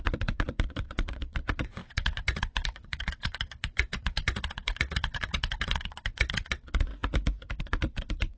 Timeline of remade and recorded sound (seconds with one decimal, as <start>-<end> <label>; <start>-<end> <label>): 0.0-6.9 remade; 6.9-7.6 recorded; 7.6-8.4 remade